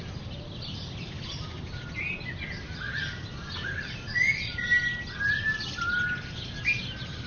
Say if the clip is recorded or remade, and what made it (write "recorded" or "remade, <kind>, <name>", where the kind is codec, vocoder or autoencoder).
recorded